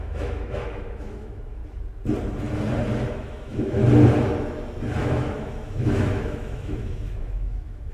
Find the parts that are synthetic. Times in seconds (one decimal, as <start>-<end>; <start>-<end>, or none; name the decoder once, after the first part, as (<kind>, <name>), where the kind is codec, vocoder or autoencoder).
0.0-1.6 (autoencoder, DAC-VAE); 3.1-3.8; 5.0-7.9